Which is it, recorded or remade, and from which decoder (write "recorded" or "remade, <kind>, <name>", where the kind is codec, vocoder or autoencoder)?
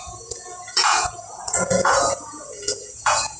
remade, vocoder, Vocos